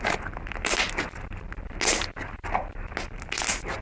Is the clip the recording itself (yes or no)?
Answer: yes